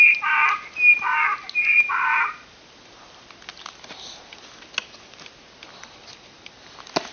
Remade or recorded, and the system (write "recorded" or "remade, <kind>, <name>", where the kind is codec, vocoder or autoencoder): recorded